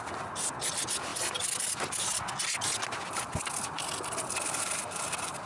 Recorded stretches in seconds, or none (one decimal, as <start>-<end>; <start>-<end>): 0.0-5.5